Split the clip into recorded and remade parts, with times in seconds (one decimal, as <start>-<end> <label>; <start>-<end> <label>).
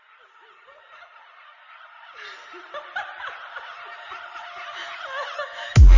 0.0-6.0 recorded